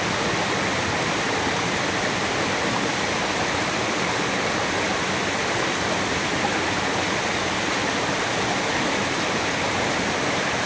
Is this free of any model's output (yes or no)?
yes